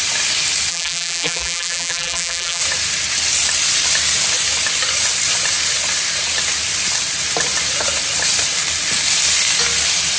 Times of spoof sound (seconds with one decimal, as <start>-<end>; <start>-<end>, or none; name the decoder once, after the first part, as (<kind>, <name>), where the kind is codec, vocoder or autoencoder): 0.7-2.6 (vocoder, BigVGAN v2)